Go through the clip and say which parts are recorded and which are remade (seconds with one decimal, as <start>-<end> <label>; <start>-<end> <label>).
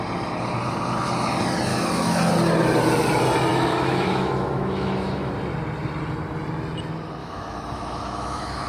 0.0-1.7 recorded; 1.7-2.3 remade; 2.3-3.5 recorded; 3.5-5.3 remade; 5.3-7.2 recorded; 7.2-8.7 remade